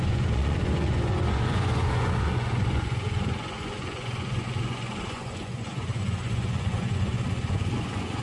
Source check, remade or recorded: remade